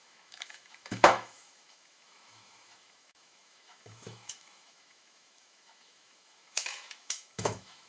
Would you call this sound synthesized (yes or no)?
yes